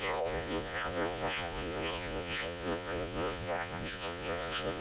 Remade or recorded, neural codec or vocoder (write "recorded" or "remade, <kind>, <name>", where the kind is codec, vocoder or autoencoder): remade, vocoder, Vocos